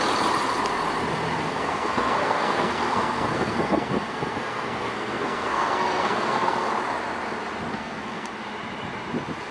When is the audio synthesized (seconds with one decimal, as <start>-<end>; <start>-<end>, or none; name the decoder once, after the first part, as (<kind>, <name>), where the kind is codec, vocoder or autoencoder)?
1.5-6.7 (codec, SNAC); 7.7-8.3